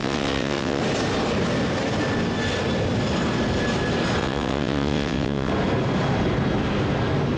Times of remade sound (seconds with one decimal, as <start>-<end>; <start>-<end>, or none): 0.0-0.8; 4.2-5.5